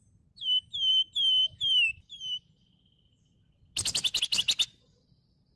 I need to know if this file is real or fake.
real